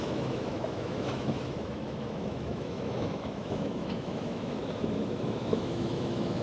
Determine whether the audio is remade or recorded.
remade